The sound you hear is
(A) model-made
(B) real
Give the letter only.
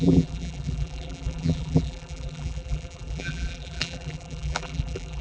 A